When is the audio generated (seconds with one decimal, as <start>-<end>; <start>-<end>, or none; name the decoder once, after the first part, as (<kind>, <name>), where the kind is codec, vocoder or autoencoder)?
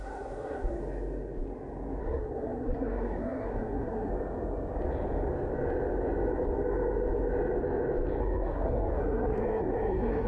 0.0-0.8 (codec, SNAC); 2.0-4.1; 8.2-10.3